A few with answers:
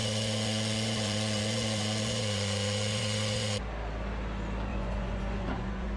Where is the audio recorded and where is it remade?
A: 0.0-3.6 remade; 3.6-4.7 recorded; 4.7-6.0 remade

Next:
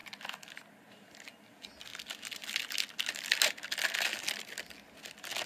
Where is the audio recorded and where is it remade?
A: 0.0-5.5 recorded

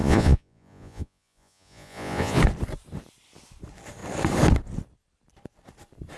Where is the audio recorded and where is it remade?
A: 0.0-2.4 remade; 2.4-6.2 recorded

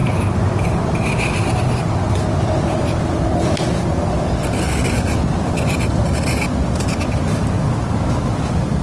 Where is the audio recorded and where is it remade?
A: 0.0-8.8 recorded

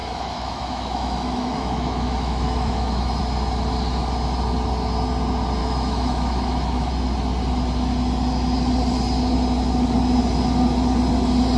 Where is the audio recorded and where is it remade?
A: 0.0-3.2 remade; 3.2-5.6 recorded; 5.6-6.9 remade; 6.9-11.6 recorded

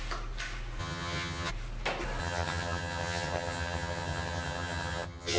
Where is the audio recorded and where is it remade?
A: 0.0-0.8 recorded; 0.8-1.5 remade; 1.5-2.2 recorded; 2.2-5.4 remade